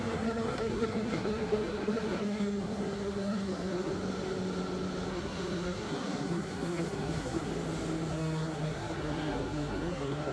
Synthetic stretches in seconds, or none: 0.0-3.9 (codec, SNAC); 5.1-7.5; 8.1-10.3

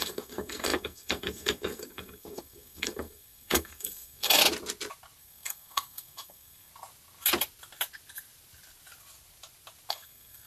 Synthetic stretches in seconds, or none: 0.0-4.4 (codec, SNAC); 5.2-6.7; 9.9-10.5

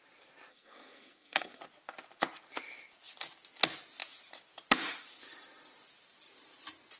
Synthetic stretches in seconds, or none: 0.5-1.6 (codec, SNAC)

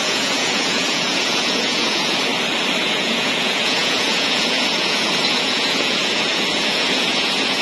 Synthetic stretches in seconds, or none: 0.0-2.3 (vocoder, Vocos); 2.8-7.6

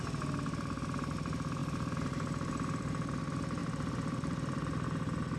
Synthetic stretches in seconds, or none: 1.6-3.1 (vocoder, BigVGAN v2); 3.6-5.4

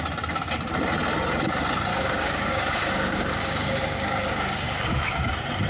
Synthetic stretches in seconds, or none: 1.9-5.3 (codec, DAC)

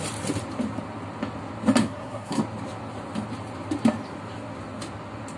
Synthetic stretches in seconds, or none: 1.8-2.4 (codec, SNAC)